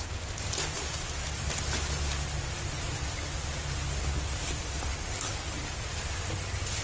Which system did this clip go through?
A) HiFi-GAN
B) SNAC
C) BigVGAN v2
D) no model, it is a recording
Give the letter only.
D